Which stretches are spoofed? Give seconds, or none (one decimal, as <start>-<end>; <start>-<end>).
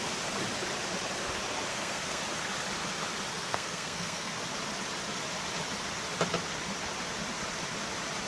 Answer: 1.7-2.2; 3.3-4.4